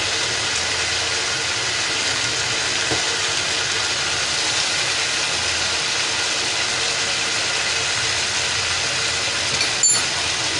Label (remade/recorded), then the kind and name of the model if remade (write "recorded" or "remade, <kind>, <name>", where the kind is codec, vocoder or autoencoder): recorded